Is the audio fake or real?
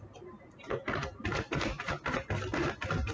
real